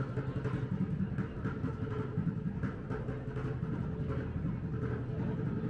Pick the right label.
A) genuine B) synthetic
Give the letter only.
A